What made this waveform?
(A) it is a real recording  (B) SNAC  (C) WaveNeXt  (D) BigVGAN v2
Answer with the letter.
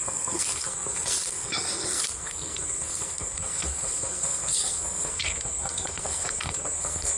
B